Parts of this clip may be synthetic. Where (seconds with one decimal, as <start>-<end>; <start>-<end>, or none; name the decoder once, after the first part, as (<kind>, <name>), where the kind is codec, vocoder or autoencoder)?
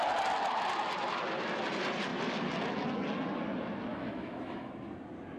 3.9-4.7 (autoencoder, DAC-VAE)